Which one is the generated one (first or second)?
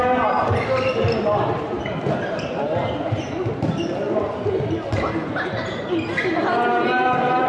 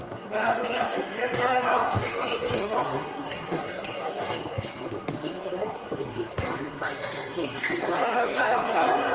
second